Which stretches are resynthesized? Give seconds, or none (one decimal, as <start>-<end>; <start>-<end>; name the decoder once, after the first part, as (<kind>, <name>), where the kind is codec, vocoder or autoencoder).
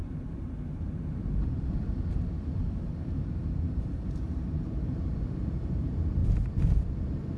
0.0-6.2 (vocoder, BigVGAN v2)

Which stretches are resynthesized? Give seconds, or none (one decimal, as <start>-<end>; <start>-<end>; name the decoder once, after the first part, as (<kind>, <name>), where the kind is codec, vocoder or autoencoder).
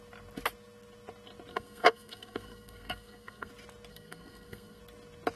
1.5-3.5 (codec, SNAC); 3.9-4.8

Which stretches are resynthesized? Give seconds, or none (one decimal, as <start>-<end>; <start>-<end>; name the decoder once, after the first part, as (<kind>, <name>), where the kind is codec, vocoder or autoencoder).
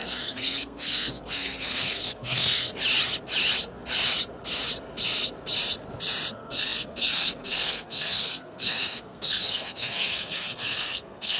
0.0-2.8 (codec, SNAC); 6.3-11.4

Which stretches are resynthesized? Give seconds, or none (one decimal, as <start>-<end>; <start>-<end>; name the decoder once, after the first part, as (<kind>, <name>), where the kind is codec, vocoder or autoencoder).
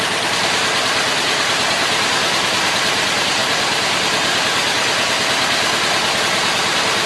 0.0-3.4 (vocoder, BigVGAN v2); 6.2-7.1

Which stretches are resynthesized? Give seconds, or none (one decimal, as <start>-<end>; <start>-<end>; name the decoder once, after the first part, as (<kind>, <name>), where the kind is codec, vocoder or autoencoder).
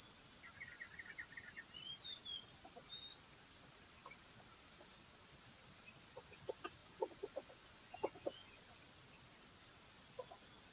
6.8-8.6 (vocoder, Vocos)